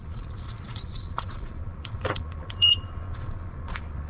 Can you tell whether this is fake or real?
fake